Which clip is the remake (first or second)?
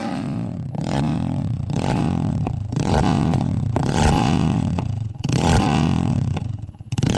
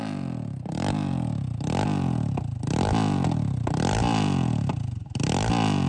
first